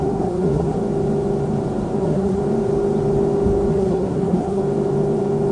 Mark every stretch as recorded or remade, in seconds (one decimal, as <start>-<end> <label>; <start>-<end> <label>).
0.0-0.8 remade; 0.8-2.0 recorded; 2.0-2.4 remade; 2.4-3.7 recorded; 3.7-4.6 remade; 4.6-5.5 recorded